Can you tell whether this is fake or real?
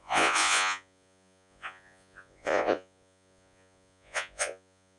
fake